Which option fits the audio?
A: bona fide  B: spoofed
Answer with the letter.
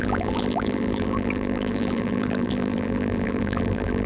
B